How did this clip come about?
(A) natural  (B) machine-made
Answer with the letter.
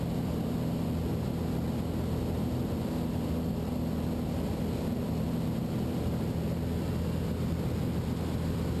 A